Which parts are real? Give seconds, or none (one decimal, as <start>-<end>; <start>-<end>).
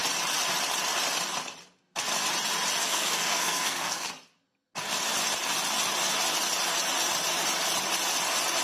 0.0-2.8; 4.1-8.6